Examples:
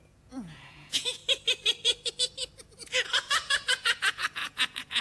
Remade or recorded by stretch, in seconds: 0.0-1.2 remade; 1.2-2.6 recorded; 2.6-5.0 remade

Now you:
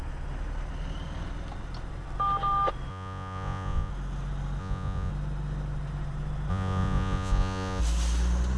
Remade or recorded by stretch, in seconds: 0.0-2.9 recorded; 2.9-3.9 remade; 3.9-4.6 recorded; 4.6-5.1 remade; 5.1-6.5 recorded; 6.5-7.8 remade; 7.8-8.6 recorded

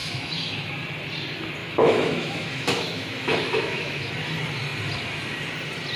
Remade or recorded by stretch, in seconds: 0.0-0.7 remade; 0.7-1.6 recorded; 1.6-4.1 remade; 4.1-6.0 recorded